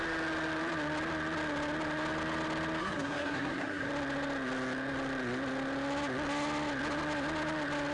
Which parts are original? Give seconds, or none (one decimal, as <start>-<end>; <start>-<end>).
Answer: 0.0-2.8; 3.9-7.9